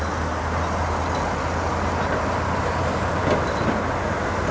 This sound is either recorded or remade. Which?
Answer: recorded